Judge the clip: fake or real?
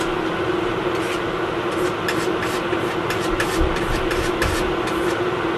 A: real